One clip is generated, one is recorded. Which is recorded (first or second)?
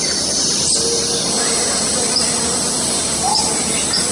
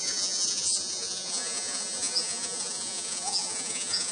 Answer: first